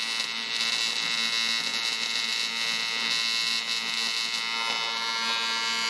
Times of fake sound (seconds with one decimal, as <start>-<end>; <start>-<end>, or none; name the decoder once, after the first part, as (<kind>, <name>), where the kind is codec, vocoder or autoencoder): none